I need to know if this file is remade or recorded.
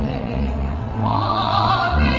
remade